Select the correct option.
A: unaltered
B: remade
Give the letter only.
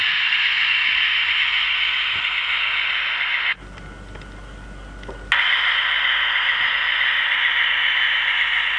A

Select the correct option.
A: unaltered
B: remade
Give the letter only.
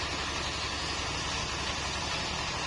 A